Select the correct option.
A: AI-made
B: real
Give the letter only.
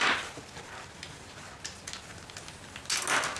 B